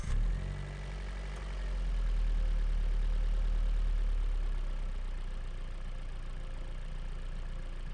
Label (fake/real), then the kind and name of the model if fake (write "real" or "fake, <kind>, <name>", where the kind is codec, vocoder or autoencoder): real